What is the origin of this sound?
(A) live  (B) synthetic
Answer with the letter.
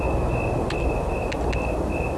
A